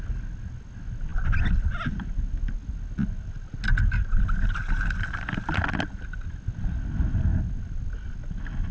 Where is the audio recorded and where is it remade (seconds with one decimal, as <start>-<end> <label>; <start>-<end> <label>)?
0.0-8.7 recorded

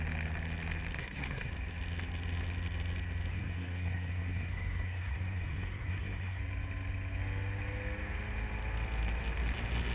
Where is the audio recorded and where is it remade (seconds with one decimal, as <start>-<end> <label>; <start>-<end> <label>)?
0.0-1.0 recorded; 1.0-1.5 remade; 1.5-3.3 recorded; 3.3-6.4 remade; 6.4-9.9 recorded